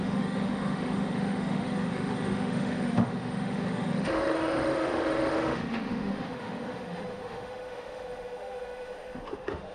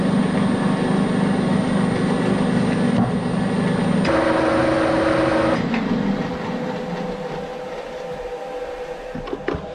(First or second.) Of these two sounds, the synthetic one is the first